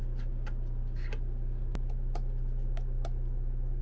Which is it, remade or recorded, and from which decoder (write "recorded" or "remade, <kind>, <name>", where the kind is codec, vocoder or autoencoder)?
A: recorded